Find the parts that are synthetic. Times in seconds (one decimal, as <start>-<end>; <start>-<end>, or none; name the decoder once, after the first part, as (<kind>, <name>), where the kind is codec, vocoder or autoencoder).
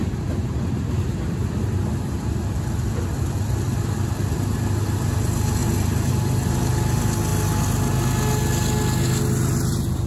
1.8-4.4 (vocoder, BigVGAN v2); 5.6-6.1